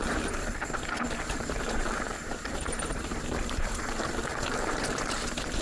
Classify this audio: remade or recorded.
remade